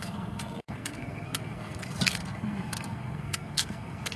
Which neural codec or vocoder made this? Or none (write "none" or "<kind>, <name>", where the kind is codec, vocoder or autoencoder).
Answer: codec, SNAC